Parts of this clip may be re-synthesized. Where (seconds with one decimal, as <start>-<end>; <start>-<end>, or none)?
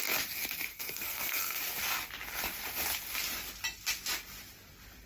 0.7-1.6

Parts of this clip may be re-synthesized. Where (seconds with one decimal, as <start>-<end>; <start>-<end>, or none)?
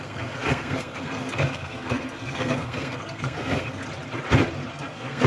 0.0-3.8; 4.7-5.3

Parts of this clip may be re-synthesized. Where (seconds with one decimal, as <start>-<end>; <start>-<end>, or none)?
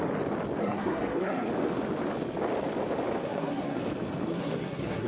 0.6-1.5; 3.2-3.8; 4.3-5.1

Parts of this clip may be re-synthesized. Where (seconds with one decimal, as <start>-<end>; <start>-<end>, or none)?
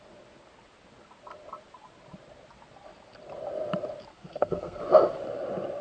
4.1-4.8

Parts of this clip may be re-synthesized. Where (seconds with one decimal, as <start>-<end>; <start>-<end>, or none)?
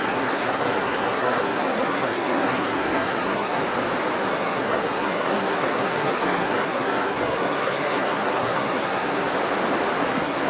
0.0-3.6; 4.2-9.3; 10.1-10.5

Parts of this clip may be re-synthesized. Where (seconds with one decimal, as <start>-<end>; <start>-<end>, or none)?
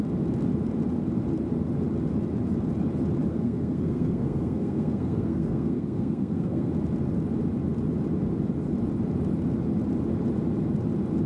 3.3-6.7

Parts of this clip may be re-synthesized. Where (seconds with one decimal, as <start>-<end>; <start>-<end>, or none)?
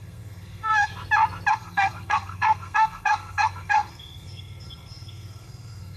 0.0-0.9; 1.5-6.0